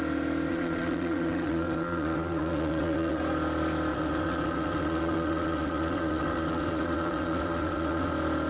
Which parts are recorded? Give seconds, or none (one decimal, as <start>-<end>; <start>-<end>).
0.0-0.5; 3.2-3.9; 8.1-8.5